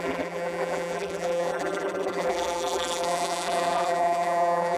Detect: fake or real fake